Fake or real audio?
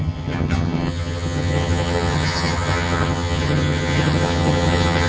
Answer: fake